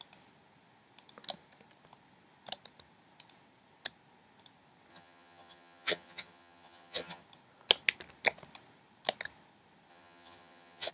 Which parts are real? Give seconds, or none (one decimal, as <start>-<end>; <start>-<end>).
0.0-4.9; 7.2-9.9